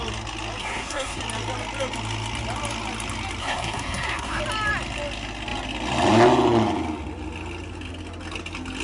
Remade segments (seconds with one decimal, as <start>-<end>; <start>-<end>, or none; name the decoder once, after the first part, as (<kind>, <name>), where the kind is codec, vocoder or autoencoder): 0.6-1.2 (codec, SNAC); 3.4-4.4